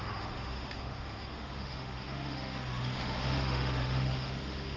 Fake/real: fake